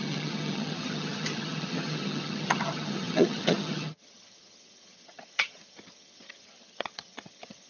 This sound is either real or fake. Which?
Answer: fake